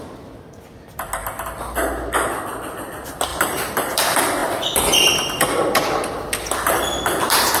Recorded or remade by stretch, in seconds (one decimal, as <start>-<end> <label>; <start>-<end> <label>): 0.0-3.3 recorded; 3.3-4.0 remade; 4.0-7.6 recorded